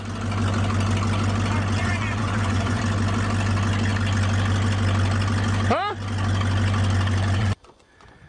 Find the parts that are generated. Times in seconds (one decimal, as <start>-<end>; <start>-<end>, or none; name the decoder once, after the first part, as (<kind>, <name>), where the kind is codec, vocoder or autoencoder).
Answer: 1.8-2.8 (vocoder, Vocos); 7.4-8.3